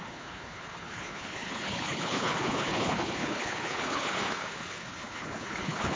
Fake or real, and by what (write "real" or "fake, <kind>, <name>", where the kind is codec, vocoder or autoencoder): fake, codec, HILCodec